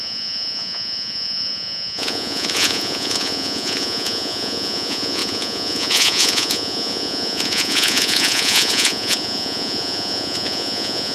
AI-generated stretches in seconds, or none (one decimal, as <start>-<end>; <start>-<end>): 0.0-11.1